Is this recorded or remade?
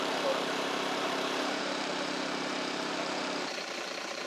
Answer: remade